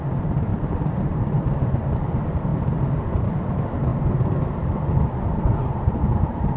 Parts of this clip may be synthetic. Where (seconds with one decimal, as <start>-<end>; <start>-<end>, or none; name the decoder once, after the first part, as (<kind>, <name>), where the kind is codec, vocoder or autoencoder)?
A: 0.0-2.5 (vocoder, BigVGAN v2); 3.2-3.9; 5.3-6.6